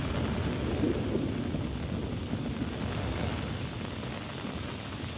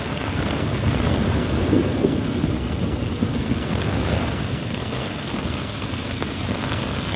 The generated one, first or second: second